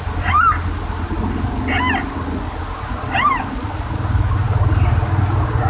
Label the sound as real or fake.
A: real